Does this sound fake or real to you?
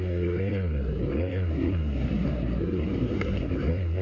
fake